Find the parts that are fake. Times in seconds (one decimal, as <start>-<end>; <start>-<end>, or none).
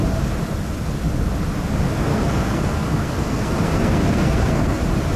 2.1-4.8